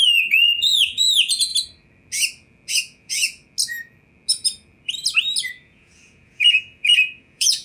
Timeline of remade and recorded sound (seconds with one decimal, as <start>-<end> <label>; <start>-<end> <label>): 0.0-1.5 remade; 1.5-2.7 recorded; 2.7-3.4 remade; 3.4-5.5 recorded; 5.5-7.6 remade